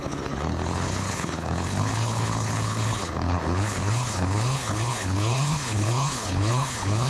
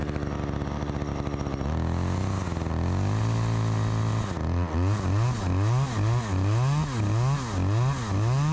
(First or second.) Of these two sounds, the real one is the second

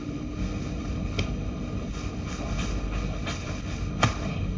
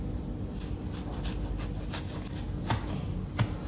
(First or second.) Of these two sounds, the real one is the second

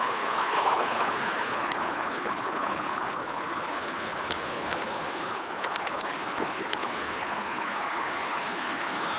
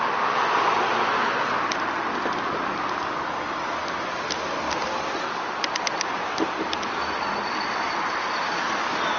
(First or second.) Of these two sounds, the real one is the second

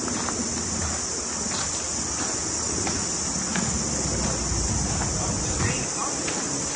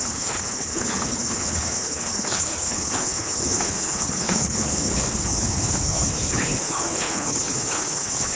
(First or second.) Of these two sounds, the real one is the first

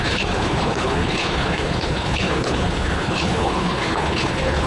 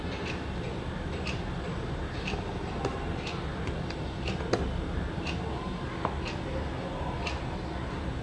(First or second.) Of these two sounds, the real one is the second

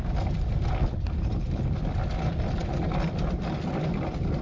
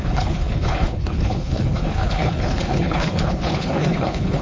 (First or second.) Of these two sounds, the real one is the first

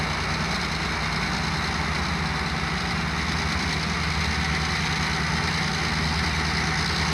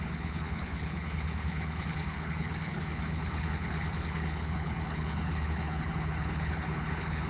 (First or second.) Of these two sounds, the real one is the first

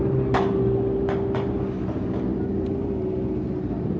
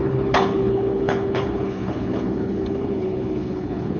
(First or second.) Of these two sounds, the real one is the first